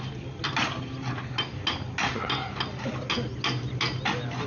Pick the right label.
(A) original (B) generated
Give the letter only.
A